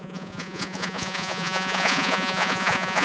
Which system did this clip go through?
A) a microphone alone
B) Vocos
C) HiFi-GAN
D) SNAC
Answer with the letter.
B